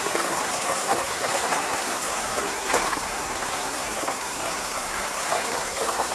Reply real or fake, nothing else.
fake